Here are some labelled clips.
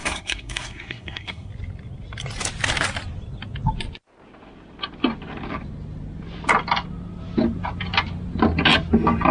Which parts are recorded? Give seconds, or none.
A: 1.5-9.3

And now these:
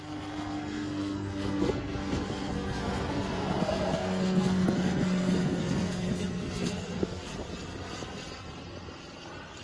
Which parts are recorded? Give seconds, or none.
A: 7.3-9.6

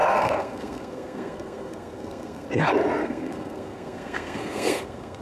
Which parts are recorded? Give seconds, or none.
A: 2.5-3.0

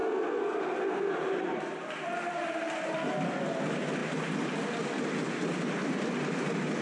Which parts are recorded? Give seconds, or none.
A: 1.1-6.8

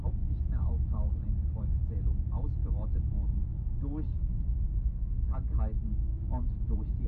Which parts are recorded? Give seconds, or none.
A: 0.0-4.8; 5.3-7.1

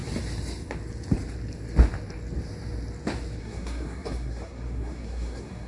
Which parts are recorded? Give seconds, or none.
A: 0.0-3.4

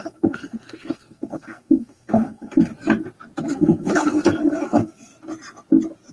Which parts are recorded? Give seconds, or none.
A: 2.7-3.4; 5.1-6.1